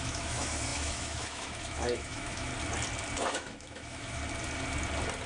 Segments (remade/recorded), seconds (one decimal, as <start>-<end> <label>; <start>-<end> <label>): 0.0-2.5 remade; 2.5-3.3 recorded; 3.3-4.2 remade; 4.2-5.3 recorded